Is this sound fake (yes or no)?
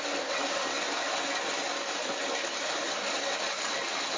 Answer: no